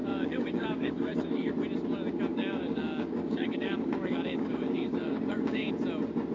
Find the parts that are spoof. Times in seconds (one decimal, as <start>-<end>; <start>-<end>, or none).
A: 0.0-1.5; 2.3-5.7